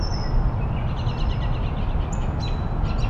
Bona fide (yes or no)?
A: yes